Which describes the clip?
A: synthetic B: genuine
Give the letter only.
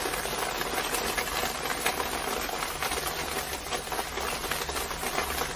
B